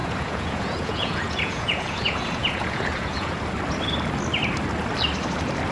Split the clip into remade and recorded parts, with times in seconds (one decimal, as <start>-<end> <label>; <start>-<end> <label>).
0.0-3.4 remade; 3.4-5.7 recorded